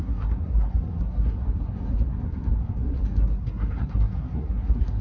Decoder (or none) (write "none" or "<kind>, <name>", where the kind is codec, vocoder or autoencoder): codec, SNAC